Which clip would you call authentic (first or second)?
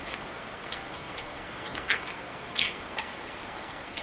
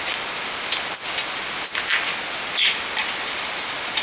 second